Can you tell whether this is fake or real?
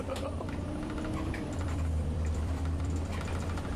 fake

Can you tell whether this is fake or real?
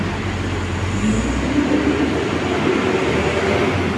real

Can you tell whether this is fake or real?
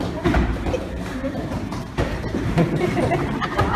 fake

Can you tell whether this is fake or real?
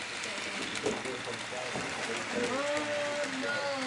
real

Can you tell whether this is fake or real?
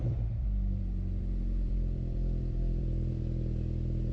fake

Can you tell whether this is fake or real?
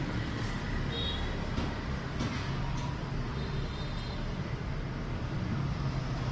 real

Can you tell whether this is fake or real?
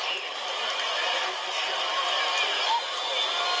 real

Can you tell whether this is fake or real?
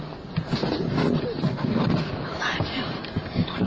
real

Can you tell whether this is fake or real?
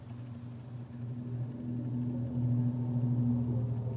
real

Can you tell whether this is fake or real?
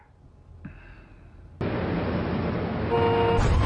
real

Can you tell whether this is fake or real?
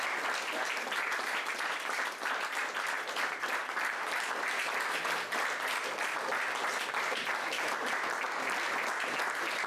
fake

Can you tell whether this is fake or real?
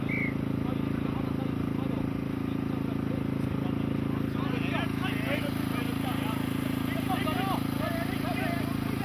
real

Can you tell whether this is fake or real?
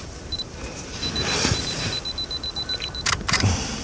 fake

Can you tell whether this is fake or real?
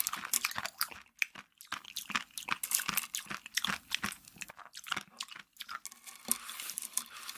real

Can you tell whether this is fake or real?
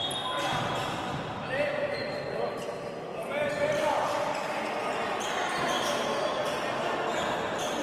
real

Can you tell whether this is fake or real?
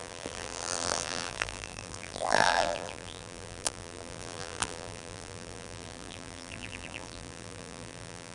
fake